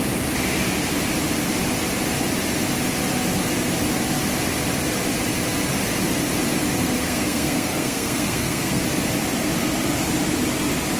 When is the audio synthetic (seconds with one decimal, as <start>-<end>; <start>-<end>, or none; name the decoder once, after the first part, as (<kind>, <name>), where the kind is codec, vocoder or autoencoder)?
7.0-8.8 (codec, SNAC)